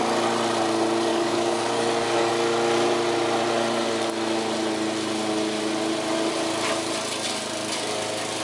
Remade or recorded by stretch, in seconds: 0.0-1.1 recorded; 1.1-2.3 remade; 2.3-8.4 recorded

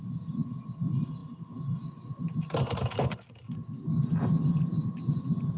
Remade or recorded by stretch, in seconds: 0.0-5.6 recorded

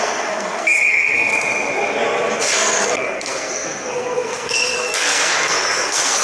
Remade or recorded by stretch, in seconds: 0.0-1.3 remade; 1.3-2.4 recorded; 2.4-6.2 remade

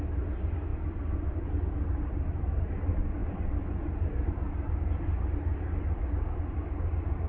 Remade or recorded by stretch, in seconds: 0.0-7.3 recorded